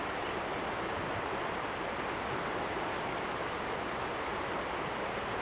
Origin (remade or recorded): recorded